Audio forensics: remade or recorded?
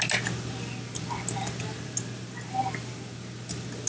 recorded